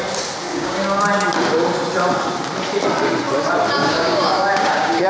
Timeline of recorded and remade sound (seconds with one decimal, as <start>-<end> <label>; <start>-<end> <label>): 0.0-0.5 recorded; 0.5-1.0 remade; 1.0-3.8 recorded; 3.8-5.1 remade